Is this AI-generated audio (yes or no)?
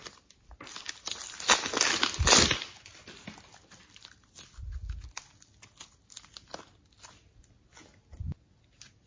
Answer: no